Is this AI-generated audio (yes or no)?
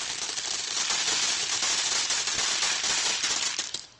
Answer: no